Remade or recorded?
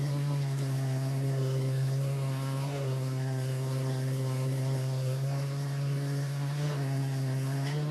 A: remade